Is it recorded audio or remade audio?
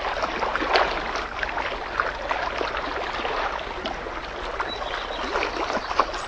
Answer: recorded